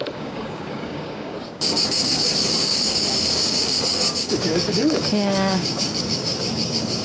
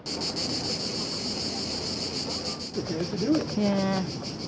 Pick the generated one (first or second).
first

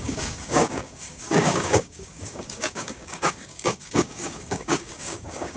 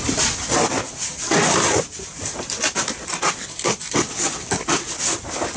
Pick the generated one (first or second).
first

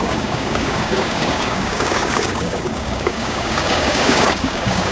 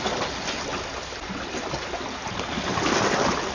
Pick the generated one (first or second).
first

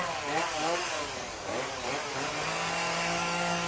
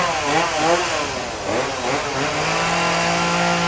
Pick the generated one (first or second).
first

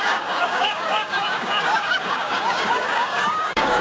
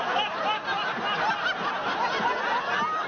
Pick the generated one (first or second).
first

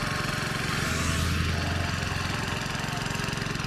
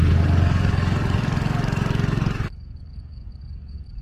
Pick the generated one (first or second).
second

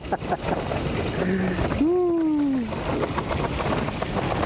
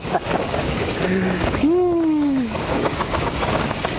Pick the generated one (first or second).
second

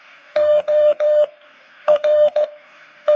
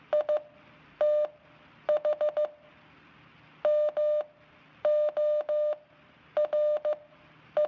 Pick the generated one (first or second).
first